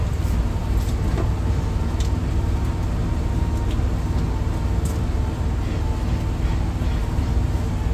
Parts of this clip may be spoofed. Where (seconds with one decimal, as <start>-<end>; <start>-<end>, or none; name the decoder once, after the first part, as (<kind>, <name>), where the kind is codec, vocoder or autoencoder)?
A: none